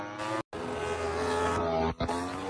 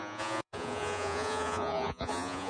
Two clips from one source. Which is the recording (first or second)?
first